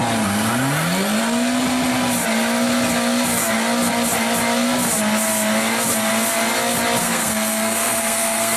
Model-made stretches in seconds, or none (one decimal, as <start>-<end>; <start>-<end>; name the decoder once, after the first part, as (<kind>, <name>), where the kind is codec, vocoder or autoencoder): 7.0-8.6 (codec, SNAC)